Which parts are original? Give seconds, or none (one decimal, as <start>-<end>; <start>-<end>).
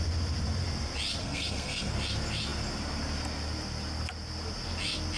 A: 0.0-1.2; 1.9-5.2